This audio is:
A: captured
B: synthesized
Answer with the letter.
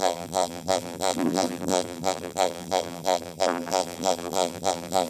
B